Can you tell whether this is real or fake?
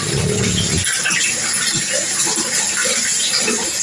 real